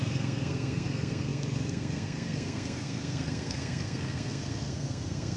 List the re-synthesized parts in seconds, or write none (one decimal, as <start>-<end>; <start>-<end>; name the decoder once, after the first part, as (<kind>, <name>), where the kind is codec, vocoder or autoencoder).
0.0-5.4 (codec, SNAC)